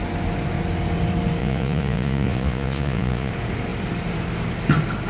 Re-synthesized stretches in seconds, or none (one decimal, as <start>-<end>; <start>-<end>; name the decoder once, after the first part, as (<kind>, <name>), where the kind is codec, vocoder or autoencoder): 1.4-3.3 (vocoder, Vocos)